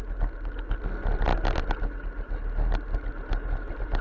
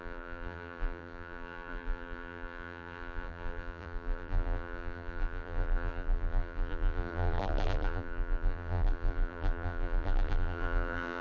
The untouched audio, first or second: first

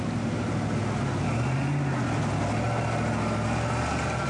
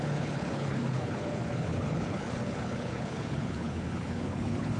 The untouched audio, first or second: first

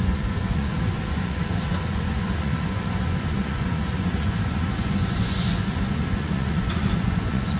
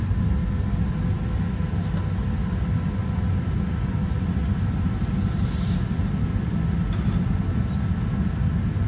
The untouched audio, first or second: second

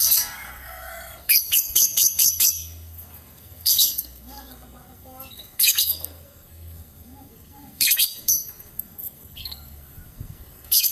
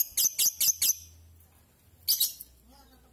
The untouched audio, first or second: second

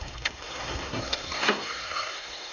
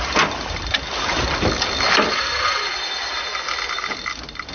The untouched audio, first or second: second